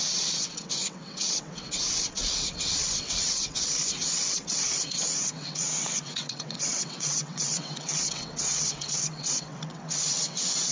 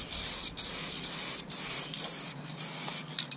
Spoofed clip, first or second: first